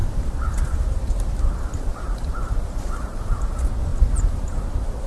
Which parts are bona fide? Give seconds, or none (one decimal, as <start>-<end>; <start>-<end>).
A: none